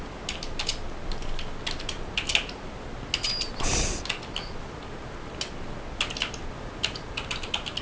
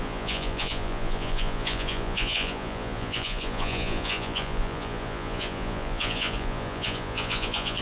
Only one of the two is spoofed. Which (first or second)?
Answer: second